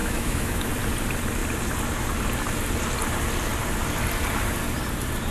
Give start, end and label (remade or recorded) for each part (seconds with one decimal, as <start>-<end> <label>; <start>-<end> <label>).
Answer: 0.0-0.7 remade; 0.7-5.3 recorded